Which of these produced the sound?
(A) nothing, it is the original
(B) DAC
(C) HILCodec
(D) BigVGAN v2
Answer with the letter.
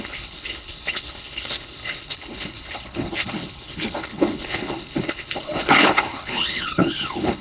C